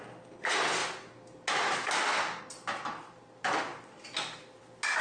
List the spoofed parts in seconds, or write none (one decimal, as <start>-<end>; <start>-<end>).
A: none